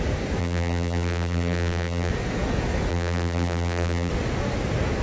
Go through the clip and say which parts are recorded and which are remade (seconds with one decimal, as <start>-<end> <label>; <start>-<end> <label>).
0.0-0.4 recorded; 0.4-2.1 remade; 2.1-2.9 recorded; 2.9-4.1 remade; 4.1-5.0 recorded